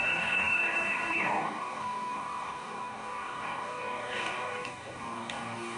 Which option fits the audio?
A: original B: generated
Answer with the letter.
B